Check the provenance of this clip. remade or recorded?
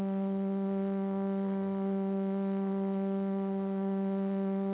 remade